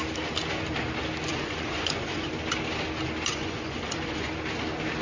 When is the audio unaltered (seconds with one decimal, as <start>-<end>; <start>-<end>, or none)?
0.0-1.3; 2.3-3.3; 4.3-5.0